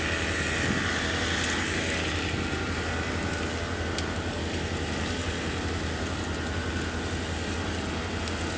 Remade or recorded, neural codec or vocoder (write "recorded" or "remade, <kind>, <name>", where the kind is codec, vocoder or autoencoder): recorded